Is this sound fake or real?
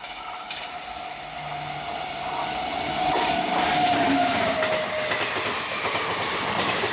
real